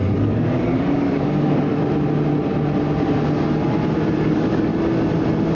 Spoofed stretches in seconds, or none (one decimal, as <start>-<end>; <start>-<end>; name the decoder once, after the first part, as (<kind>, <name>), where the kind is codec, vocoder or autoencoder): 0.0-1.8 (codec, DAC); 4.2-4.7